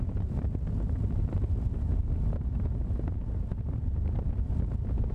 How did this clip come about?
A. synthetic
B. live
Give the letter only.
A